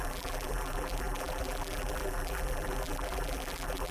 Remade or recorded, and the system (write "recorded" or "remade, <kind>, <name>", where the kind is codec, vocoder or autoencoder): remade, vocoder, BigVGAN v2